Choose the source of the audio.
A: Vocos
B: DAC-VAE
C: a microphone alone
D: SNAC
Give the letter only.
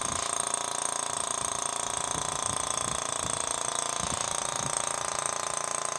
C